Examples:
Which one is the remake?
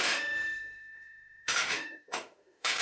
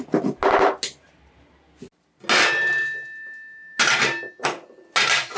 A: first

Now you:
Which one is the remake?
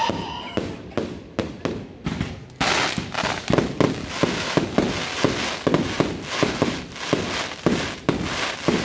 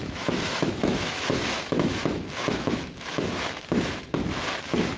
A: second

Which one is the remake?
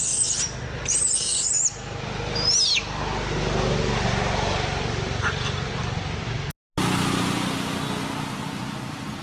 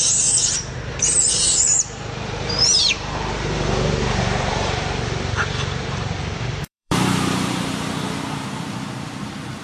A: second